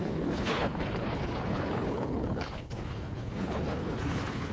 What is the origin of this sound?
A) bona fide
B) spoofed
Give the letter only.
B